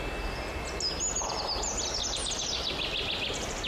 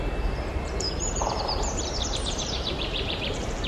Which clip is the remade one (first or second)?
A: second